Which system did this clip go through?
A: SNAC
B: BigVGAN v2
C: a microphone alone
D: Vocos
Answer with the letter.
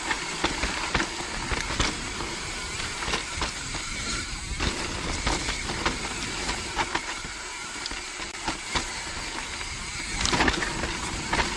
C